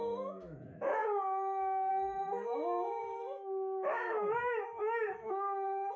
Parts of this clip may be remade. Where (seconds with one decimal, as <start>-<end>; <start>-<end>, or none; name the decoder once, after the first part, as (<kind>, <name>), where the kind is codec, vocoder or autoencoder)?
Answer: 0.0-1.0 (autoencoder, DAC-VAE); 1.9-6.0